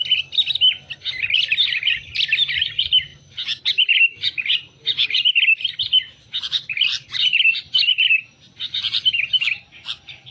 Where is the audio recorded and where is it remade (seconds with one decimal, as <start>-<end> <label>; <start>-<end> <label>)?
0.0-10.3 recorded